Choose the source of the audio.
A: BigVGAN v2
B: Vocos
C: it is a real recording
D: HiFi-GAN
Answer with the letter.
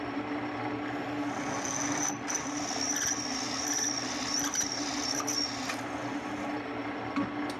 C